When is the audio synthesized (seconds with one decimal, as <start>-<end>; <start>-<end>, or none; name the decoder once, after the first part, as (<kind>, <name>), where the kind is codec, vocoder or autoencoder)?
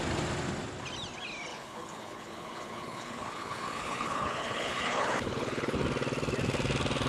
1.5-5.8 (codec, HILCodec)